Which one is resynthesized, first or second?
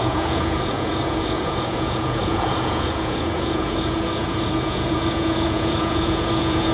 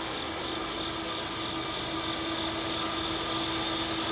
first